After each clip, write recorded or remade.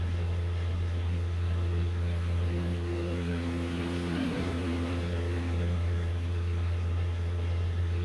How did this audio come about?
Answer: remade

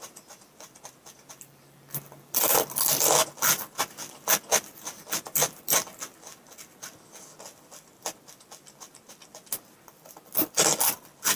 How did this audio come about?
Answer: recorded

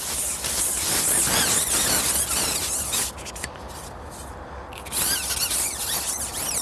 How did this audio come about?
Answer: recorded